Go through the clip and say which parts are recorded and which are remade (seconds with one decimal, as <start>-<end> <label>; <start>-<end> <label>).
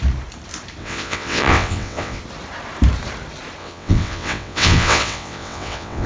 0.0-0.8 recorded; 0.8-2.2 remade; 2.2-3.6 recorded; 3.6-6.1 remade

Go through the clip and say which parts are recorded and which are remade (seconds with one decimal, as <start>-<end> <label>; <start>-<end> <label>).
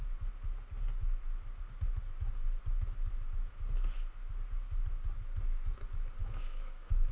0.0-6.2 recorded; 6.2-7.1 remade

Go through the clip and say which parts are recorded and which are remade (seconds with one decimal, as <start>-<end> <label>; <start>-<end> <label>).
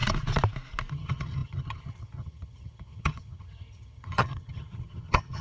0.0-0.9 recorded; 0.9-5.4 remade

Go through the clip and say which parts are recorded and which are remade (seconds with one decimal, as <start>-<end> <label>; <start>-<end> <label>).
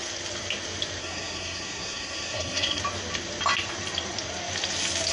0.0-1.0 recorded; 1.0-2.8 remade; 2.8-5.1 recorded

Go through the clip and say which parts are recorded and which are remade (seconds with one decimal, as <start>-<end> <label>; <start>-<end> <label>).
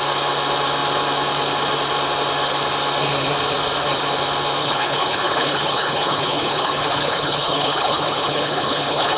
0.0-4.6 recorded; 4.6-9.2 remade